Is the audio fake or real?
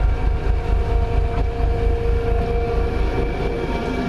real